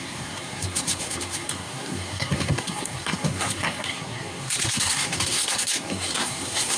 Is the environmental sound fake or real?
fake